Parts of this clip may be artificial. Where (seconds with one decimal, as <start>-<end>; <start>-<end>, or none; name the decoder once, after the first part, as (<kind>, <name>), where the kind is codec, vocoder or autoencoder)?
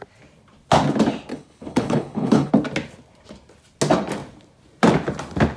1.3-2.5 (codec, HILCodec)